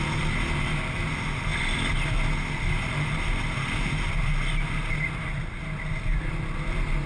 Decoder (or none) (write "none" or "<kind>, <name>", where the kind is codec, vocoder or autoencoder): none